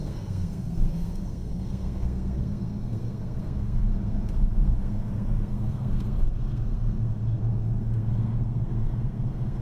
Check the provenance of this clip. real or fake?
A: fake